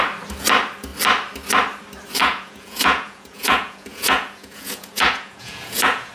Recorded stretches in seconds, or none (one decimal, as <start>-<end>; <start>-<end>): 0.0-2.2